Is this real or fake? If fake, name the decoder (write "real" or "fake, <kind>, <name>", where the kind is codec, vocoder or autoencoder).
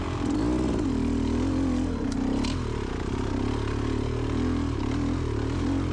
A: real